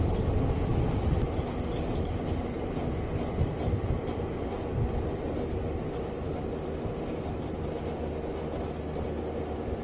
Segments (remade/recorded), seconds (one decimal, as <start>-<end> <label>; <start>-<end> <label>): 0.0-9.8 recorded